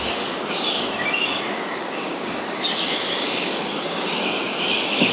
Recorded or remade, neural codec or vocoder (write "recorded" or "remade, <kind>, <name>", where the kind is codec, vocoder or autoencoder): remade, codec, DAC